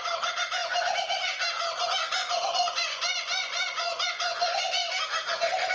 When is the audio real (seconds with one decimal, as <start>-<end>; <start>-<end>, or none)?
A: 0.0-2.2; 4.6-5.7